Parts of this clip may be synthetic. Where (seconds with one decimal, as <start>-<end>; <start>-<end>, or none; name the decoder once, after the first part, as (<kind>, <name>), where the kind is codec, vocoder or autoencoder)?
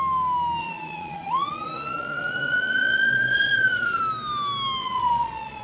0.6-4.0 (vocoder, Vocos); 4.8-5.6